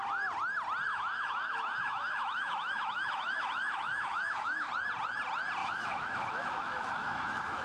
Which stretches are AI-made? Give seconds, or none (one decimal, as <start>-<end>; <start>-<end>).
0.9-4.7; 5.6-7.6